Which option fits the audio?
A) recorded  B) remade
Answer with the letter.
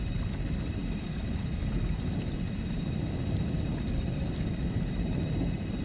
B